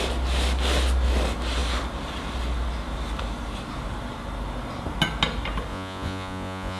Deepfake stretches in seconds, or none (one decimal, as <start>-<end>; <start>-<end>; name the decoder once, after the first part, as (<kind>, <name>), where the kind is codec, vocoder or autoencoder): 5.7-6.8 (vocoder, Vocos)